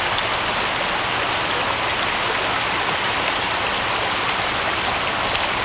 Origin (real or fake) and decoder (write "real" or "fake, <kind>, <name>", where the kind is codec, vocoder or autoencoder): real